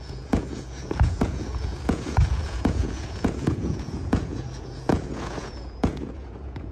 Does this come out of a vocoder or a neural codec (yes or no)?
yes